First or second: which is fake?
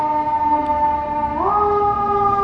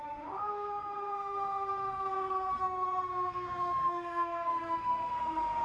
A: second